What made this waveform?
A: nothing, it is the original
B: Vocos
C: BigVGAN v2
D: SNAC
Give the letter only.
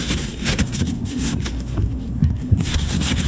D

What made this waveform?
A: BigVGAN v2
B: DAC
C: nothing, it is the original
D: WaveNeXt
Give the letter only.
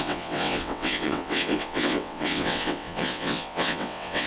D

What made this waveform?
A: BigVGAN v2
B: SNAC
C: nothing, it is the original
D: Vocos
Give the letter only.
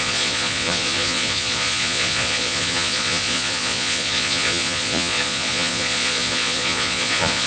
D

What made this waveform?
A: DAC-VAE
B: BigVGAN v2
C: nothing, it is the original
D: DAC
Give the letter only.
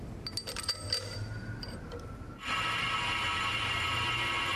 C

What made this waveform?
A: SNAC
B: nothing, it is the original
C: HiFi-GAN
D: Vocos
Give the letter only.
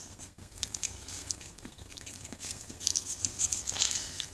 A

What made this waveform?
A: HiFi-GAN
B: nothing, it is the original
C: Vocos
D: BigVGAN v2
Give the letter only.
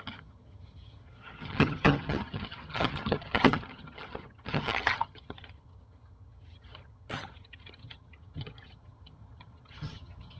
A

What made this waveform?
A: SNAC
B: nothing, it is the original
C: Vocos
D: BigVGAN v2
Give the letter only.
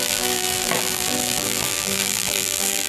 D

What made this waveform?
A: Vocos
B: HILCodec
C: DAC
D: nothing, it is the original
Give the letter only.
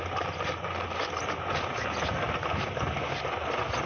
D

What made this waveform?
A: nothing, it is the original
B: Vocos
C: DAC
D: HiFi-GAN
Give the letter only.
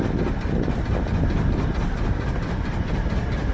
A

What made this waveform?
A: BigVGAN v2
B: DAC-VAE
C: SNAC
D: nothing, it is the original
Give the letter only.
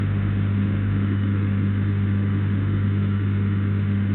B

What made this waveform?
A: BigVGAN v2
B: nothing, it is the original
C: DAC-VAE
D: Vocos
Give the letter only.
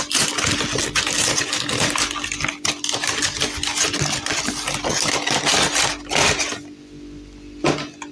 B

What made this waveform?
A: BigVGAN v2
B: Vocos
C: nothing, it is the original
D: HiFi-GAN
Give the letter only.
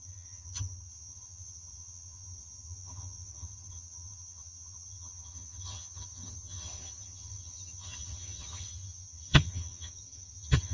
D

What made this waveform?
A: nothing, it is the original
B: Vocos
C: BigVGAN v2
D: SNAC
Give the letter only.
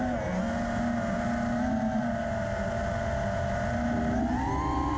A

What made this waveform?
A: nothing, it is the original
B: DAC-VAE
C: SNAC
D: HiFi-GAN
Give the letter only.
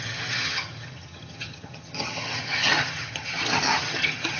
D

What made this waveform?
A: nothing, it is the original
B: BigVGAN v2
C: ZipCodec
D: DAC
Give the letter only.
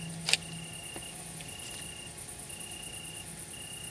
A